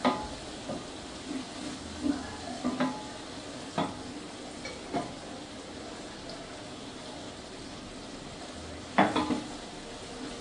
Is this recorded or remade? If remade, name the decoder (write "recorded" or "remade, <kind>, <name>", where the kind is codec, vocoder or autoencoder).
recorded